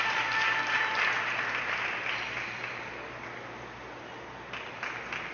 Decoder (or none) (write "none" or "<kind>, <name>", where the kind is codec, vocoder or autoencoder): none